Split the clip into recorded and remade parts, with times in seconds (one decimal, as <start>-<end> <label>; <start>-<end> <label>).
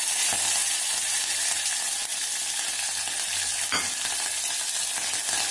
0.0-5.5 recorded